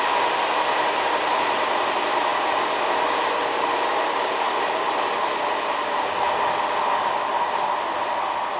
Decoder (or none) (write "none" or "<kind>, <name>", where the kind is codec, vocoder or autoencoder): none